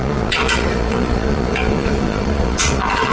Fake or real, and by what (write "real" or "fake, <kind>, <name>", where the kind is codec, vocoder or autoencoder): fake, vocoder, Vocos